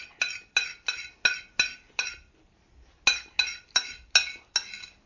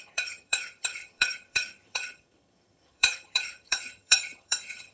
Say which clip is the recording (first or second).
first